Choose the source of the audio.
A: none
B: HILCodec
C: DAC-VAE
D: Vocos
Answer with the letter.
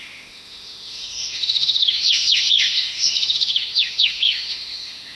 C